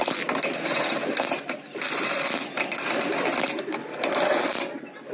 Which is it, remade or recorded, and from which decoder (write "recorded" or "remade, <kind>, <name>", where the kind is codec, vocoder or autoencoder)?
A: recorded